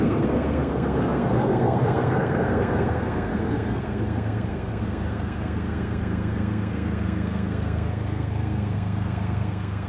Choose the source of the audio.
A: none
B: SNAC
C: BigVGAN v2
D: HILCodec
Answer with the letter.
B